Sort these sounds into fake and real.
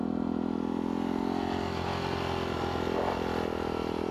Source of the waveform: real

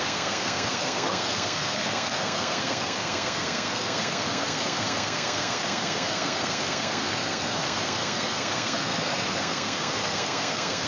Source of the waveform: fake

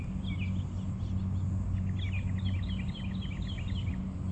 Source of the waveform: real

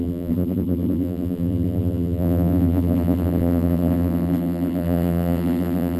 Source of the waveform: fake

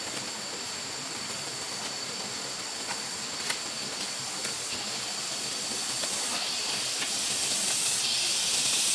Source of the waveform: real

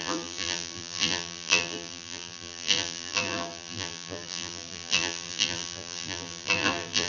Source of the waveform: fake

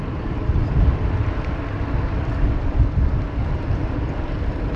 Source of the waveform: fake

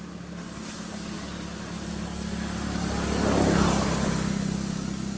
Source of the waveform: real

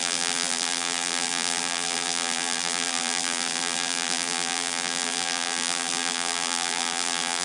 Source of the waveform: fake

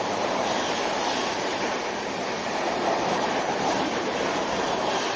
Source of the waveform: fake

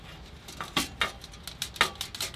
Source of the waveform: real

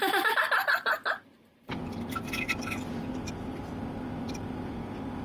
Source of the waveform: real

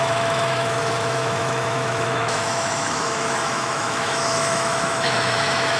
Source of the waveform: fake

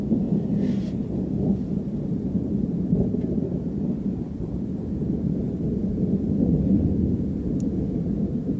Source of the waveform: real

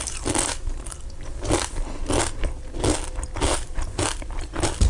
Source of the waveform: real